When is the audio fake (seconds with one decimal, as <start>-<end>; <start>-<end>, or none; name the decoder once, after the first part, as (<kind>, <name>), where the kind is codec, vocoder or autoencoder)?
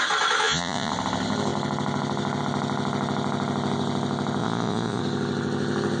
0.4-0.9 (vocoder, Vocos); 4.4-5.0